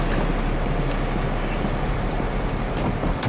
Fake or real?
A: real